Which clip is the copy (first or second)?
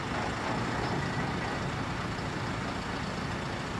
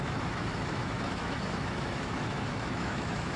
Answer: second